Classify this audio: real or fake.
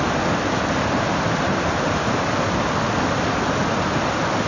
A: real